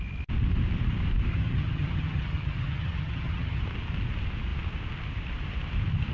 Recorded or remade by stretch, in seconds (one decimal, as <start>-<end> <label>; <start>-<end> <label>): 0.0-1.3 recorded; 1.3-3.6 remade; 3.6-6.1 recorded